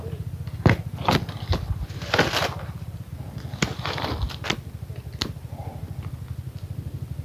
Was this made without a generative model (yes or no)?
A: yes